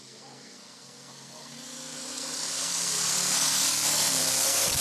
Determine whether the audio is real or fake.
fake